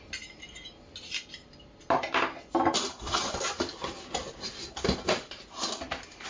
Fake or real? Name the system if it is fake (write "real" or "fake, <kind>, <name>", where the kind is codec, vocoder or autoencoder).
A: real